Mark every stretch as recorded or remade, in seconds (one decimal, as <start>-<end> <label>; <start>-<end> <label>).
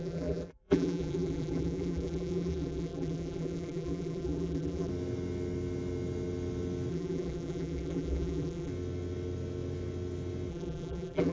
0.0-4.9 remade; 4.9-6.9 recorded; 6.9-8.7 remade; 8.7-10.5 recorded; 10.5-11.3 remade